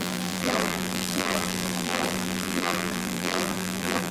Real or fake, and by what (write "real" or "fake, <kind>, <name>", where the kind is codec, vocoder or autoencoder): fake, vocoder, BigVGAN v2